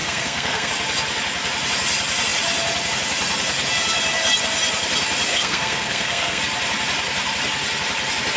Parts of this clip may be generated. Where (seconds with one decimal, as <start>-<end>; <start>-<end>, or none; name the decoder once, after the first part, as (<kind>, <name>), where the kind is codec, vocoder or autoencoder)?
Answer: 0.0-0.7 (codec, SNAC); 5.3-6.4